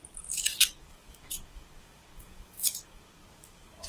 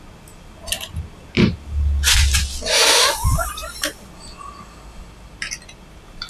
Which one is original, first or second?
second